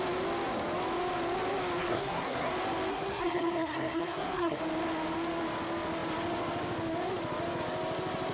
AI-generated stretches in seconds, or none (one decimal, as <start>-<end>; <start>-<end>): 1.8-2.5; 2.9-4.6